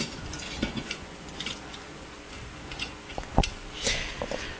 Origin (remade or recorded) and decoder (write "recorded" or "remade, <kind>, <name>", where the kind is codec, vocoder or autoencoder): remade, vocoder, Vocos